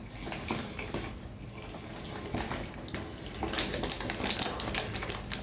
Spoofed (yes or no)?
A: no